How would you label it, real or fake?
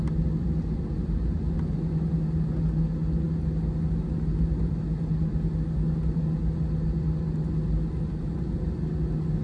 real